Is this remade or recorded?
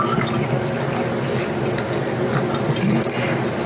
recorded